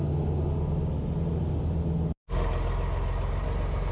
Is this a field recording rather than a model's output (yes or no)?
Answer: yes